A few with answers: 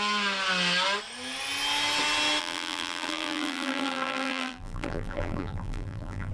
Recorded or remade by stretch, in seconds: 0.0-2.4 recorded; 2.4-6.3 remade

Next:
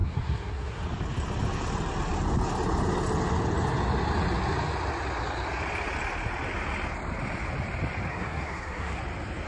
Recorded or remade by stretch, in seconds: 0.0-0.8 remade; 0.8-8.1 recorded; 8.1-9.0 remade; 9.0-9.5 recorded

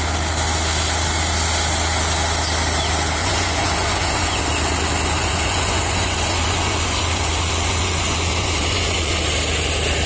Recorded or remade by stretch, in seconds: 0.0-3.2 recorded; 3.2-4.4 remade; 4.4-5.2 recorded; 5.2-9.2 remade; 9.2-10.1 recorded

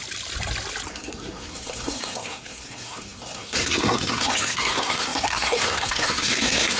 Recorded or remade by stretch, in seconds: 0.0-0.9 recorded; 0.9-6.8 remade